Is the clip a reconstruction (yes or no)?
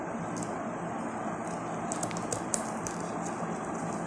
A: no